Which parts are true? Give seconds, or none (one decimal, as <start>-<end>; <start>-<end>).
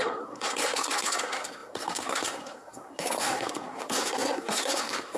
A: none